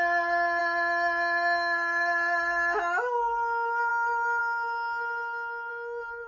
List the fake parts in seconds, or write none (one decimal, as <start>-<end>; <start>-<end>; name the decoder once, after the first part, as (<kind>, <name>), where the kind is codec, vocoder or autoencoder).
none